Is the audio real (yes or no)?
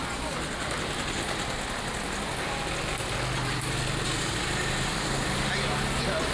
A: yes